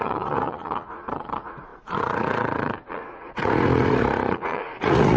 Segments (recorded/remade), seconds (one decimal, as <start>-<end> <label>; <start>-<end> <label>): 0.0-5.2 remade